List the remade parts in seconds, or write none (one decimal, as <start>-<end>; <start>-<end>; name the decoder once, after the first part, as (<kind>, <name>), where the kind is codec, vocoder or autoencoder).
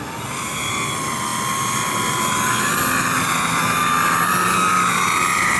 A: none